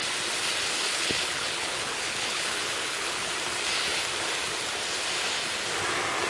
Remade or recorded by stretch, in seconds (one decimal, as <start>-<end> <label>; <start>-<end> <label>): 0.0-0.9 recorded; 0.9-3.3 remade; 3.3-6.3 recorded